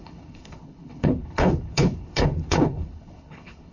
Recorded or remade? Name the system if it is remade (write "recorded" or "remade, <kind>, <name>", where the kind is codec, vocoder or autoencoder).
remade, codec, HILCodec